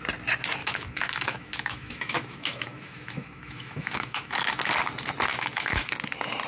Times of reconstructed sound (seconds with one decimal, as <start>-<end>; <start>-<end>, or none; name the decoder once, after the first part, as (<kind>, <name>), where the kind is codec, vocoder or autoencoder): 0.6-4.5 (autoencoder, DAC-VAE); 5.3-5.9

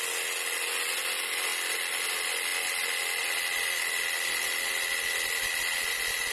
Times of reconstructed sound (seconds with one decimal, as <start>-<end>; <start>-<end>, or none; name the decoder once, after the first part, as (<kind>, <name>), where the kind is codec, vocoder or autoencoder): none

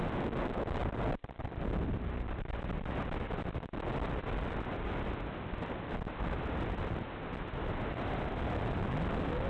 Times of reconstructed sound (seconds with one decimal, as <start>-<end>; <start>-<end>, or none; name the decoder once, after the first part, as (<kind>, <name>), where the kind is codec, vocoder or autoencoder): 0.8-1.7 (vocoder, BigVGAN v2)

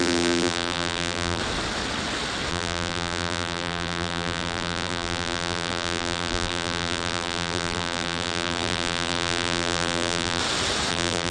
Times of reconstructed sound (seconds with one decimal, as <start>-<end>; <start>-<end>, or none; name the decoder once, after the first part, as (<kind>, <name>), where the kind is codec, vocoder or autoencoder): 0.0-1.4 (vocoder, BigVGAN v2); 2.5-10.4; 10.9-11.3

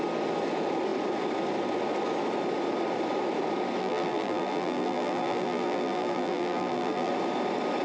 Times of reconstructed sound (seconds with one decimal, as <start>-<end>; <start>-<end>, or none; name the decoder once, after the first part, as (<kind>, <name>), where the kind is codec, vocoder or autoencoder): 3.8-7.1 (vocoder, BigVGAN v2)